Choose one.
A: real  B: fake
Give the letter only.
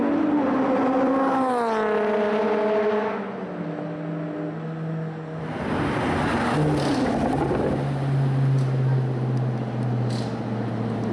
A